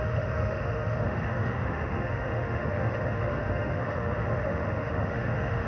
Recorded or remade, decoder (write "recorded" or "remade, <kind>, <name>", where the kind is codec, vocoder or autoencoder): remade, autoencoder, DAC-VAE